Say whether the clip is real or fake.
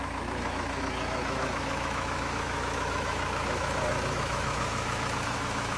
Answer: fake